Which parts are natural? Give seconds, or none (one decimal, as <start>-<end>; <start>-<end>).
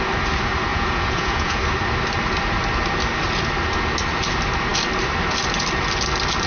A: 0.0-0.7; 1.6-6.5